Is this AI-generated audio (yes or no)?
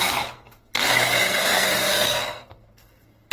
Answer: yes